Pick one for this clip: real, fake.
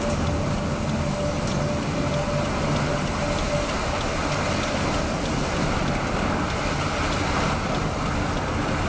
real